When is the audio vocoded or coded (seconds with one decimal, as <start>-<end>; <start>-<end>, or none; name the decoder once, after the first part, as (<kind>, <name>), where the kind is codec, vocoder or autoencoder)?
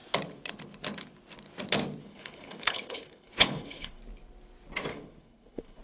2.0-4.0 (codec, HILCodec); 4.9-5.8